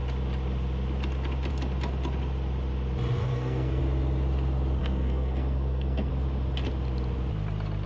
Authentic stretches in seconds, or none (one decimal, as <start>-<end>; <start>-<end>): 0.0-3.2; 3.8-4.8; 6.1-7.9